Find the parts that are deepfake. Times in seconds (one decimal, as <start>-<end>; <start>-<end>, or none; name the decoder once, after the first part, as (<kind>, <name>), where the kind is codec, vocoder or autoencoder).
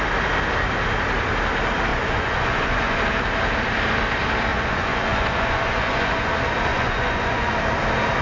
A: 1.9-3.0 (vocoder, Vocos); 4.5-6.3; 6.7-7.5